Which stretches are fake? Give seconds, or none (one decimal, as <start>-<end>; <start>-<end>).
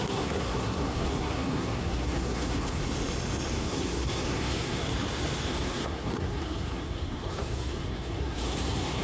0.0-2.8; 3.5-4.8; 5.5-9.0